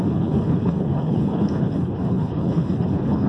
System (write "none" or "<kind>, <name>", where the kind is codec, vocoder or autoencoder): codec, HILCodec